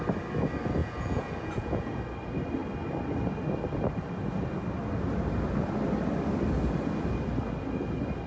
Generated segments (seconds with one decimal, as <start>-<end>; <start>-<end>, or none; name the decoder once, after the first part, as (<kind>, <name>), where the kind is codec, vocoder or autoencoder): 0.8-2.0 (vocoder, Vocos)